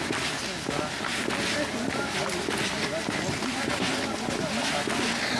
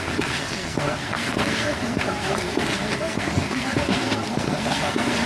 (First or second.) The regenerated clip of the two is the second